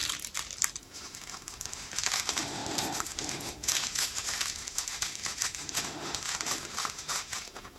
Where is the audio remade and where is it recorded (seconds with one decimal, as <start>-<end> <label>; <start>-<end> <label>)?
0.0-0.8 recorded; 0.8-7.8 remade